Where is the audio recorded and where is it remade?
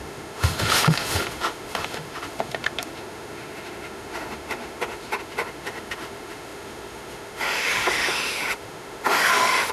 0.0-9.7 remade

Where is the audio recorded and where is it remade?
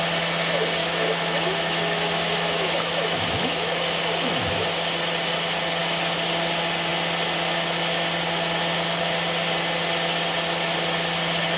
0.0-0.8 recorded; 0.8-4.5 remade; 4.5-11.6 recorded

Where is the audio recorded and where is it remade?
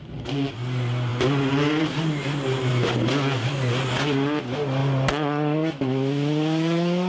0.0-7.1 recorded